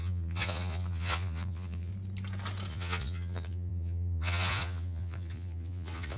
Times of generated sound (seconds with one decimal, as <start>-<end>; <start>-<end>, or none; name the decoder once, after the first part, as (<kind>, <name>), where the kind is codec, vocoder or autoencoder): 0.0-1.9 (vocoder, Vocos); 2.7-6.2